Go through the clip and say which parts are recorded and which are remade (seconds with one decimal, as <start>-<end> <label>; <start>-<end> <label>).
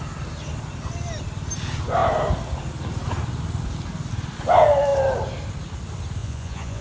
0.0-6.2 recorded; 6.2-6.8 remade